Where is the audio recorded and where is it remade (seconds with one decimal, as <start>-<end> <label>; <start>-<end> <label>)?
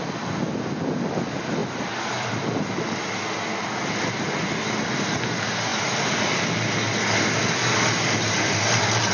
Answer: 0.0-1.6 recorded; 1.6-2.3 remade; 2.3-5.7 recorded; 5.7-6.4 remade; 6.4-9.1 recorded